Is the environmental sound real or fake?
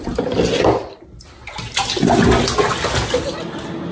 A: real